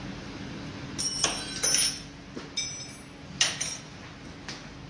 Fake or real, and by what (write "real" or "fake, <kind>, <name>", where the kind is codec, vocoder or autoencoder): real